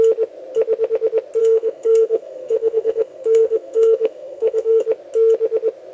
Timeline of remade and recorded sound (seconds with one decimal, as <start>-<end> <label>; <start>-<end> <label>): 0.0-1.4 recorded; 1.4-4.8 remade; 4.8-5.9 recorded